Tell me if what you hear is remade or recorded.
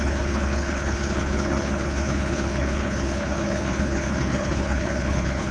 remade